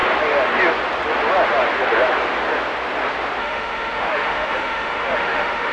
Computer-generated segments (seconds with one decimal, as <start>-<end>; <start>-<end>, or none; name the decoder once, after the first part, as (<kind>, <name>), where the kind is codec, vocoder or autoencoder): 3.4-5.7 (autoencoder, DAC-VAE)